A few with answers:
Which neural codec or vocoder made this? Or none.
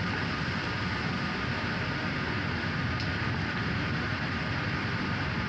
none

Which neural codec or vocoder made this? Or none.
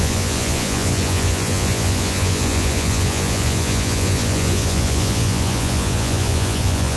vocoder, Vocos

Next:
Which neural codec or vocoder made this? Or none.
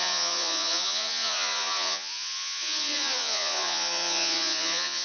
vocoder, Vocos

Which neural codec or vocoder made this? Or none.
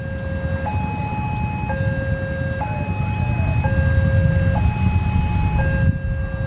none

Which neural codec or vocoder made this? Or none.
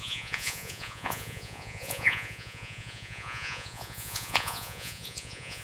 vocoder, Vocos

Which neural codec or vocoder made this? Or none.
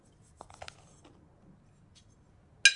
none